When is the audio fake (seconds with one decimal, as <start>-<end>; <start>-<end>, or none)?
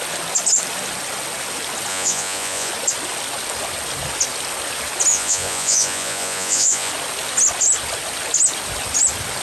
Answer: 1.9-2.7; 5.1-6.9